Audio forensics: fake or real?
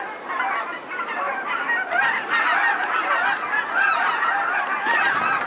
real